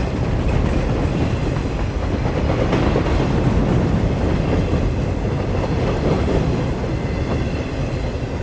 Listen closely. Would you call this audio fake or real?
real